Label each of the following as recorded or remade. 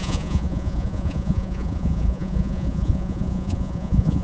remade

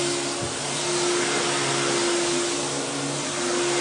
recorded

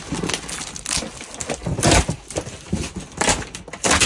recorded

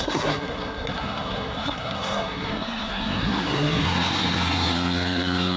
remade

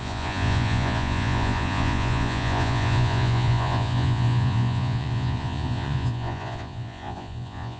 remade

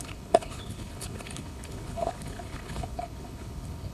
remade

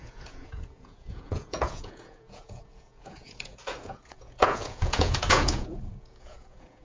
remade